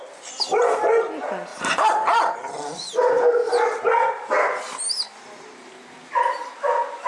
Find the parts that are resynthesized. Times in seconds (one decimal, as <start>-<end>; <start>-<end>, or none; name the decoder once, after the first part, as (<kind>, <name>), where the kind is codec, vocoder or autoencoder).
1.5-3.1 (vocoder, BigVGAN v2)

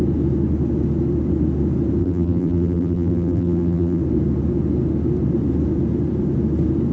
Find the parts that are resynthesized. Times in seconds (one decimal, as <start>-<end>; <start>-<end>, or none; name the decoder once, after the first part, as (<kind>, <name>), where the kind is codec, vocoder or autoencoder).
2.0-4.0 (vocoder, BigVGAN v2)